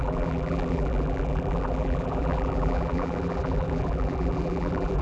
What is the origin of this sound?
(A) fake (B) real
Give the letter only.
A